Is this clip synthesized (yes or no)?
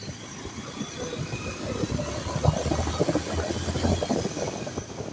no